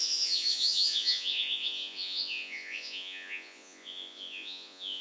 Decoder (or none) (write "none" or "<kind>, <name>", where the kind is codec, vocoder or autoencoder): vocoder, Vocos